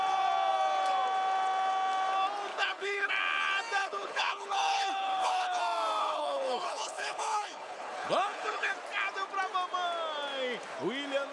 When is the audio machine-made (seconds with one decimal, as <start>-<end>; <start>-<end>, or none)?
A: 2.5-3.1; 3.8-5.6; 6.0-8.7